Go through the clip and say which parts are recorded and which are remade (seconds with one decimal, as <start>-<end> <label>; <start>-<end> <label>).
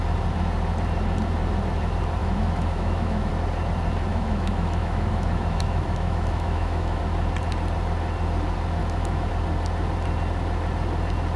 0.0-2.2 recorded; 2.2-3.3 remade; 3.3-4.1 recorded; 4.1-7.0 remade; 7.0-8.8 recorded; 8.8-9.3 remade; 9.3-11.4 recorded